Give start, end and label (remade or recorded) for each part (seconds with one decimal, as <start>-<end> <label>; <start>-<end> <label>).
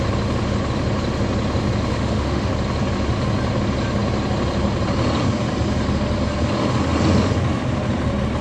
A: 0.0-1.9 recorded; 1.9-2.5 remade; 2.5-8.4 recorded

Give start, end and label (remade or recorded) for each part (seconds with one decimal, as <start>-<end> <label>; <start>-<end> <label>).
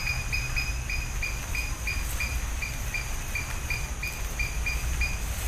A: 0.0-5.5 recorded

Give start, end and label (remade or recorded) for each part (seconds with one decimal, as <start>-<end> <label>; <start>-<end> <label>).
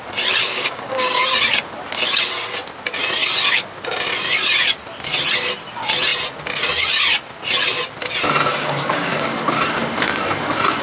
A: 0.0-0.4 recorded; 0.4-1.2 remade; 1.2-8.5 recorded; 8.5-9.2 remade; 9.2-10.8 recorded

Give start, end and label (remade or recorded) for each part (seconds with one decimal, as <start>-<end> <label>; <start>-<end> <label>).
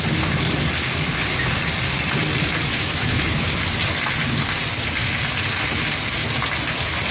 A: 0.0-2.7 recorded; 2.7-3.6 remade; 3.6-7.1 recorded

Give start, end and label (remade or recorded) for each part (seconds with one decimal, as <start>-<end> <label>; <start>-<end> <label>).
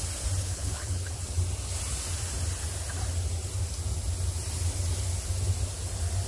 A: 0.0-0.4 recorded; 0.4-1.1 remade; 1.1-6.3 recorded